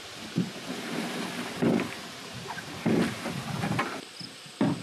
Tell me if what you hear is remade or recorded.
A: recorded